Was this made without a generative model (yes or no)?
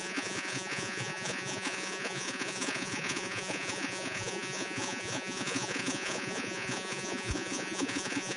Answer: no